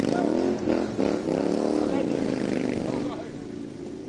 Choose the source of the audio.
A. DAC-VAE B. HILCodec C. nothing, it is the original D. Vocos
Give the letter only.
C